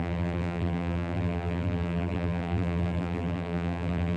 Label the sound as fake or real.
fake